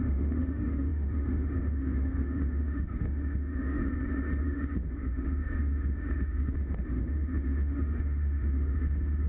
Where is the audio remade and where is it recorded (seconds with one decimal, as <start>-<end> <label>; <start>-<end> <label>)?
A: 0.0-3.8 remade; 3.8-4.4 recorded; 4.4-9.3 remade